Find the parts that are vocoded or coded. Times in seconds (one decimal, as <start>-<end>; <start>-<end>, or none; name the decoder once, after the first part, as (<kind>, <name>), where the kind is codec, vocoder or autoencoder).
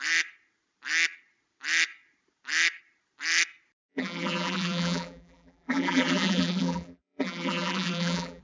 3.9-8.4 (vocoder, BigVGAN v2)